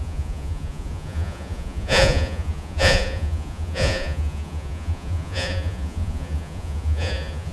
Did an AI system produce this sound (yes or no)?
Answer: yes